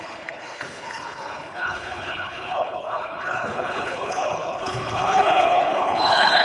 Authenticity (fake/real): fake